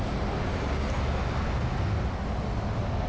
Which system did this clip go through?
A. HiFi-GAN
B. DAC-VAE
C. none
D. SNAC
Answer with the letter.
C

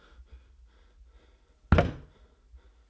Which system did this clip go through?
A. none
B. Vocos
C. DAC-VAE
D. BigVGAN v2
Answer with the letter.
A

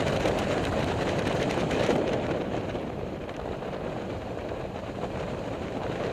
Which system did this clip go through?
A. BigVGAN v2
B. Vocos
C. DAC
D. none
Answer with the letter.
A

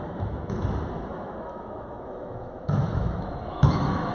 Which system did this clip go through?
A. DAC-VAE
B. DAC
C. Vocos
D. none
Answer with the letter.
A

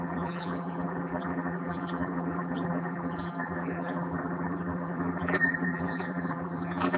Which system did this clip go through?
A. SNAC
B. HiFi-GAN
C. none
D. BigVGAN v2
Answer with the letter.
D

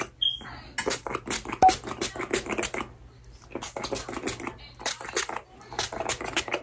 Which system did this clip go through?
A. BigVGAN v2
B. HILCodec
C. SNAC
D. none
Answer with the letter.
D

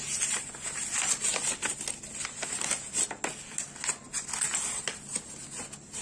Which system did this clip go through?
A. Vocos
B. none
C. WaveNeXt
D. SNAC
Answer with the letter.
B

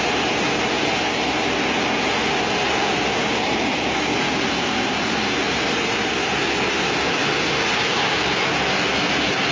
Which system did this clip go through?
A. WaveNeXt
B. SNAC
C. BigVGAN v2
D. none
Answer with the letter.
D